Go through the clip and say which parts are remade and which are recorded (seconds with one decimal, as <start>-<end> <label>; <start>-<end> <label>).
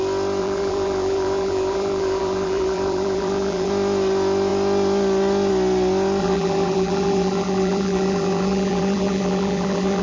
0.0-0.4 recorded; 0.4-3.7 remade; 3.7-6.2 recorded; 6.2-10.0 remade